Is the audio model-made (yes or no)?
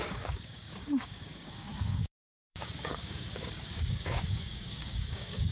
yes